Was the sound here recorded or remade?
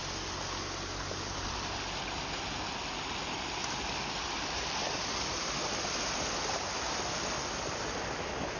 recorded